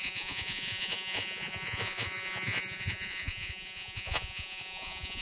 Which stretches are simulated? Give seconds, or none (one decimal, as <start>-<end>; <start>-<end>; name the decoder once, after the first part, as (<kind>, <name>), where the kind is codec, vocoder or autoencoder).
0.0-5.2 (vocoder, Vocos)